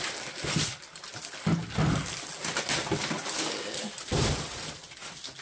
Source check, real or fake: real